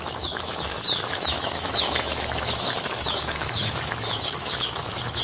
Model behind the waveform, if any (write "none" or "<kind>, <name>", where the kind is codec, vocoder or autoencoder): autoencoder, DAC-VAE